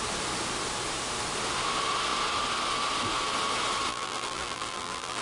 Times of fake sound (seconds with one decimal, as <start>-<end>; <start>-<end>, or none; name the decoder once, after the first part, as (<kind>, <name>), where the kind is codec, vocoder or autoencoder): 3.9-5.2 (vocoder, BigVGAN v2)